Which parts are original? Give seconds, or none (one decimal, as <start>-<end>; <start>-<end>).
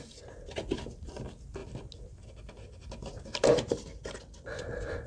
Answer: 0.0-5.1